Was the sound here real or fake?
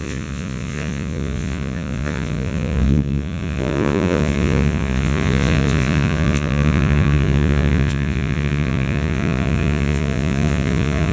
fake